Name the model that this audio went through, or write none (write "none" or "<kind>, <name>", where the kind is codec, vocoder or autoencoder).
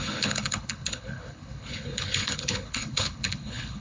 codec, HILCodec